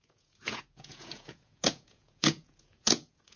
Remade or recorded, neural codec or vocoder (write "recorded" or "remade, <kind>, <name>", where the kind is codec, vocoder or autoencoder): remade, vocoder, Vocos